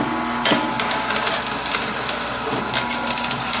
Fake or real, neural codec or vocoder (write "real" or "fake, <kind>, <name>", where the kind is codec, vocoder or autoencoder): real